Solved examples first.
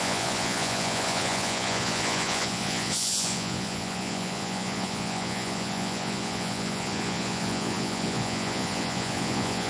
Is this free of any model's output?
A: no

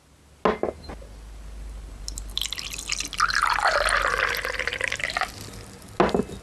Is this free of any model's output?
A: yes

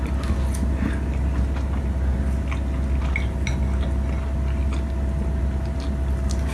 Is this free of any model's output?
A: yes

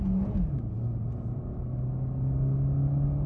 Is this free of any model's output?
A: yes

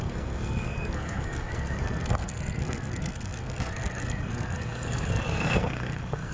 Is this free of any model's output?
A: no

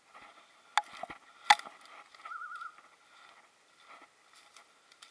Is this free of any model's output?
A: yes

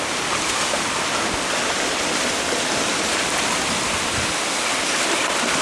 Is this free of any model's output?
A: yes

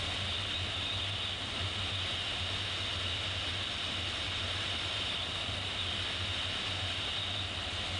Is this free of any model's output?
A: yes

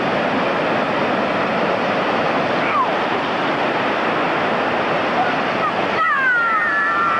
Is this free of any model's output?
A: yes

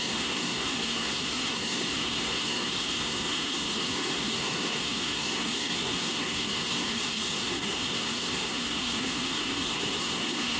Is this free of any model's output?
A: no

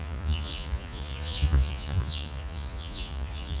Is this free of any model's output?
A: no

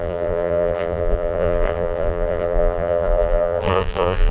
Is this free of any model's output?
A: no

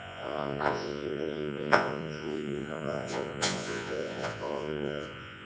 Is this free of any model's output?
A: no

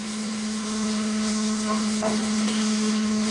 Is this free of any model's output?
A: no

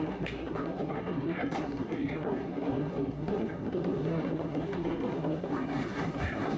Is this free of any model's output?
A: no